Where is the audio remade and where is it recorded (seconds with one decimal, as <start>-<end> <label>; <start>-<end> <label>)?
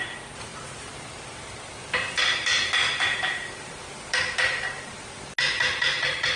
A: 0.0-0.5 recorded; 0.5-1.2 remade; 1.2-2.8 recorded; 2.8-5.0 remade; 5.0-6.4 recorded